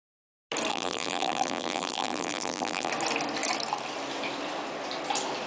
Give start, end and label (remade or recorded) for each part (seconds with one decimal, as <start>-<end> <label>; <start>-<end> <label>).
0.0-0.7 recorded; 0.7-2.9 remade; 2.9-5.5 recorded